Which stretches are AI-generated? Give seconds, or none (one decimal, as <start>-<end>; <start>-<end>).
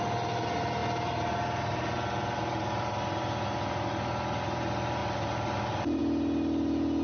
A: 5.0-6.0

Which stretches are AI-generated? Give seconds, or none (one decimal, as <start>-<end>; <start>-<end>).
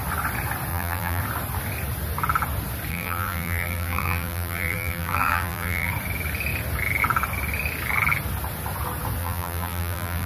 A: 0.7-1.2; 2.9-5.9; 9.2-10.3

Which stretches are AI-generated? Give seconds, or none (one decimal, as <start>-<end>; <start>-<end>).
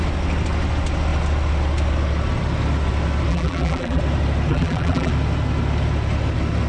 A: 3.3-4.0; 4.5-5.1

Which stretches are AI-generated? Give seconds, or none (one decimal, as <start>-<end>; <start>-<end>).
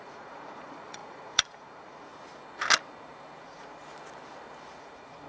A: 0.0-2.1; 3.4-3.8; 4.8-5.3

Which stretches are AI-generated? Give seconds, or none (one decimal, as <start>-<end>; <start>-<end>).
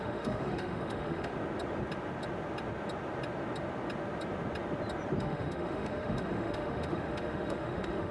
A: 0.0-1.3; 5.2-8.1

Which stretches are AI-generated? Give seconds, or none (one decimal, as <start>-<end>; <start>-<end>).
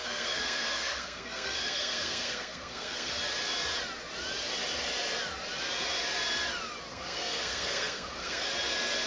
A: 0.0-3.1; 6.9-8.5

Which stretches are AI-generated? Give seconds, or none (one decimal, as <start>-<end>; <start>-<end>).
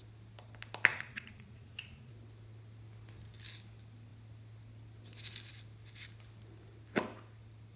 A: 0.9-2.1